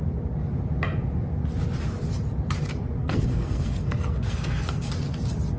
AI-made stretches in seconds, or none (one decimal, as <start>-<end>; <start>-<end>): 3.0-4.9